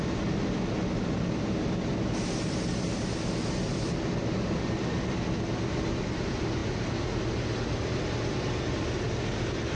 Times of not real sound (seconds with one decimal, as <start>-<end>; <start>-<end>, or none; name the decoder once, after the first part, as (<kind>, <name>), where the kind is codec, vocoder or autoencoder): none